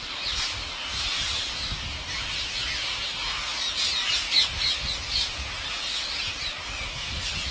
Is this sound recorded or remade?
recorded